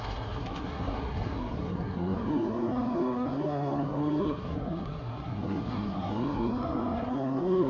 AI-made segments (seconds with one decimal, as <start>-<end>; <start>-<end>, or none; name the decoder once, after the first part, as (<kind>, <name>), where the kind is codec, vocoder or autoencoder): 0.0-7.7 (codec, SNAC)